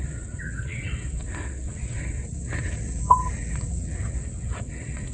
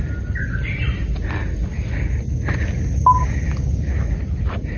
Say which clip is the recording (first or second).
second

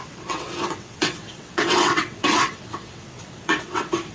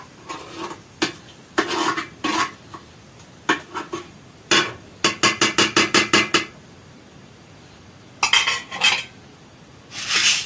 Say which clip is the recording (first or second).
second